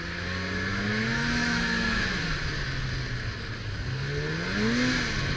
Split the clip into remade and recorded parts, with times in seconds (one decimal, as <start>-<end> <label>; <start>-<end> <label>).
0.0-0.7 recorded; 0.7-2.2 remade; 2.2-5.4 recorded